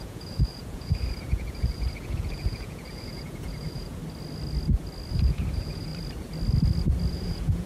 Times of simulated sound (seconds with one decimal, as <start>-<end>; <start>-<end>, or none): 0.0-4.0; 5.1-5.9; 7.1-7.7